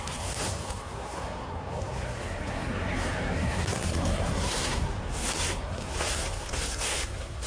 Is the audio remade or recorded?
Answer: remade